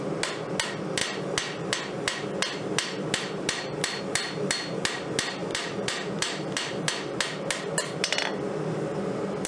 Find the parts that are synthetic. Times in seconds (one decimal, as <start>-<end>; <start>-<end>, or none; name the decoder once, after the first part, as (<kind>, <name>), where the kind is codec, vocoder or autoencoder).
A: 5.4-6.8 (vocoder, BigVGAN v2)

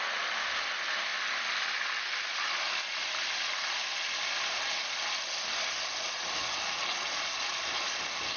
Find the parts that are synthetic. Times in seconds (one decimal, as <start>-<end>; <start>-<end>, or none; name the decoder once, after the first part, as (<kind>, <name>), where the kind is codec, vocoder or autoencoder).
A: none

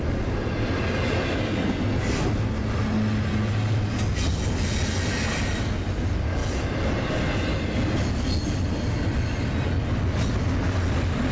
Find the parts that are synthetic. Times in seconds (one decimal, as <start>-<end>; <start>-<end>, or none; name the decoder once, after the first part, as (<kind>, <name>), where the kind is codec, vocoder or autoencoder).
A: none

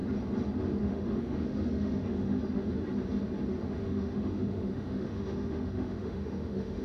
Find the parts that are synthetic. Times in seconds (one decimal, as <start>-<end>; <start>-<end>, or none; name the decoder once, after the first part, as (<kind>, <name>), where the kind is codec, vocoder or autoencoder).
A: 0.8-2.8 (autoencoder, DAC-VAE); 3.6-6.8

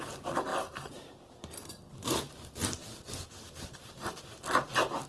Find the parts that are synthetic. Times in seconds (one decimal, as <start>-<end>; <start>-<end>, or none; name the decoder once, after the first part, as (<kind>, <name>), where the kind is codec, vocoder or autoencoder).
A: none

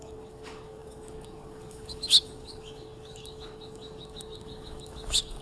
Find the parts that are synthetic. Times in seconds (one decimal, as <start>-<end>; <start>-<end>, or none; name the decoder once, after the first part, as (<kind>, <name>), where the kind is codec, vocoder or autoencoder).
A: 0.0-5.4 (codec, DAC)